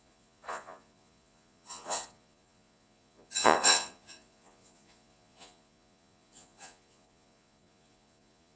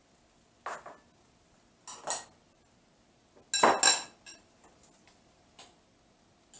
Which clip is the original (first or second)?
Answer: second